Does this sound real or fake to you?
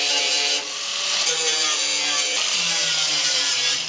fake